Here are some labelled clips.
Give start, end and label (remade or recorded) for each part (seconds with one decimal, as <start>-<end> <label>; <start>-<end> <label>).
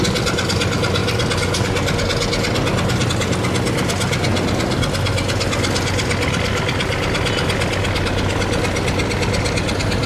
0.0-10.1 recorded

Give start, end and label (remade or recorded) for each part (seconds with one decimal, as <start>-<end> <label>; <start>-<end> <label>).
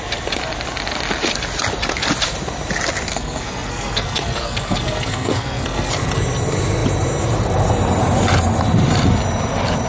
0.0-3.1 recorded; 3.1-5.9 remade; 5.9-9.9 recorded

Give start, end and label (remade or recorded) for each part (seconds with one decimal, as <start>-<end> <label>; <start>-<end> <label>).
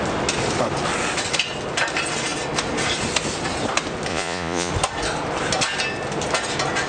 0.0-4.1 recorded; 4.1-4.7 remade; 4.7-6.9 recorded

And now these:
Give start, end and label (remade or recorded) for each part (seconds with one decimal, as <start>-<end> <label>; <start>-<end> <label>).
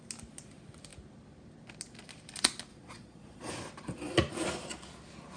0.0-2.7 recorded; 2.7-3.5 remade; 3.5-5.4 recorded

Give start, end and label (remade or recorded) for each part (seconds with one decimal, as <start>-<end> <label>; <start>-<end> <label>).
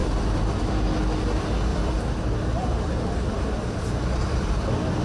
0.0-0.7 remade; 0.7-1.7 recorded; 1.7-2.2 remade; 2.2-2.6 recorded; 2.6-4.6 remade; 4.6-5.0 recorded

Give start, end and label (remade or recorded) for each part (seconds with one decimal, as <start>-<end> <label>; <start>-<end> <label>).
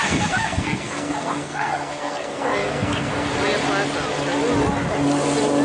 0.0-3.3 remade; 3.3-5.6 recorded